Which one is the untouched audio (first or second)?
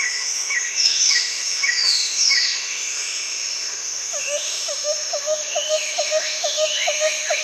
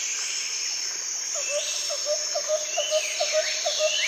second